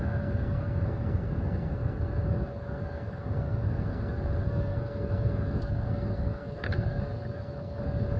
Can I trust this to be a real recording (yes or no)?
no